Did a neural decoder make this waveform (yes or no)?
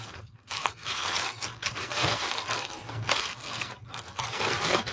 yes